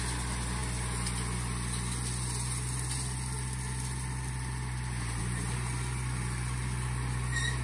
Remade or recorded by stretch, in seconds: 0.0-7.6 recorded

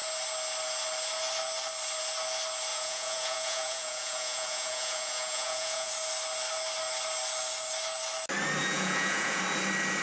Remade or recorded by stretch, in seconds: 0.0-2.7 recorded; 2.7-5.9 remade; 5.9-8.6 recorded; 8.6-9.4 remade; 9.4-10.0 recorded

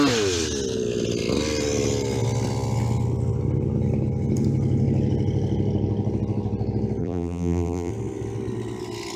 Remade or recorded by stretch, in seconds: 0.0-7.0 recorded; 7.0-7.9 remade; 7.9-9.2 recorded

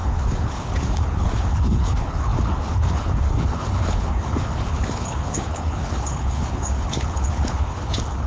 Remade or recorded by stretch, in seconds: 0.0-8.3 remade

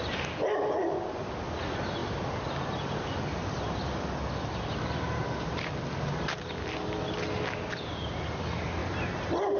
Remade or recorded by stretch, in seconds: 0.0-8.8 recorded; 8.8-9.6 remade

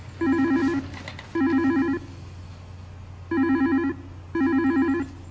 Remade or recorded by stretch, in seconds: 0.0-5.3 recorded